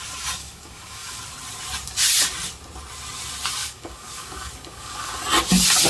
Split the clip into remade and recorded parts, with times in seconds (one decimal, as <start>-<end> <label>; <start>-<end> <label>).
0.0-0.4 recorded; 0.4-1.2 remade; 1.2-3.6 recorded; 3.6-5.1 remade; 5.1-5.9 recorded